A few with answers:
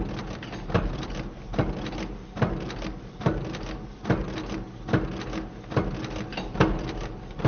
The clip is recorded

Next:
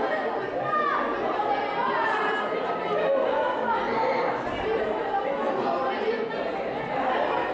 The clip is recorded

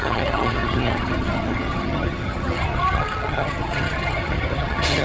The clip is remade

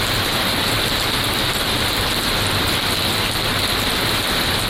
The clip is recorded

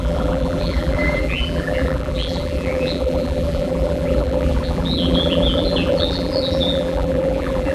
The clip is remade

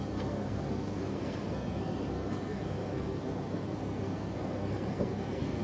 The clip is remade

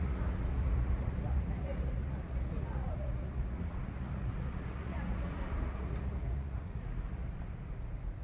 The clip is remade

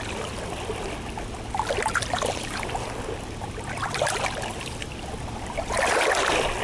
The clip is recorded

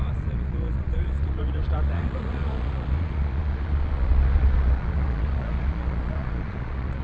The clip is remade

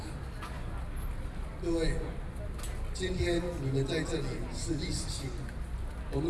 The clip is recorded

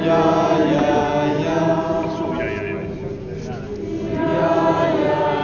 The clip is recorded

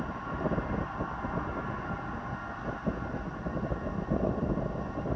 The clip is recorded